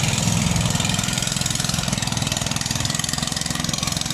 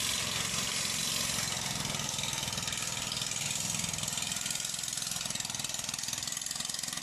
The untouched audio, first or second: second